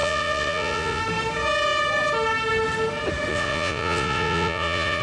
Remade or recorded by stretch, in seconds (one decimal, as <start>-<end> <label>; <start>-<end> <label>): 0.0-1.0 remade; 1.0-3.3 recorded; 3.3-5.0 remade